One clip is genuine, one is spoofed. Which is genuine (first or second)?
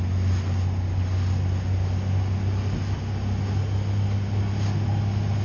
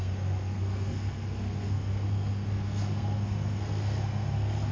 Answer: first